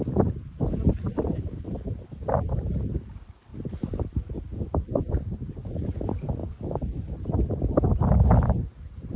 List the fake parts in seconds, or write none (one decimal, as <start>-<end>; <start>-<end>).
0.0-9.2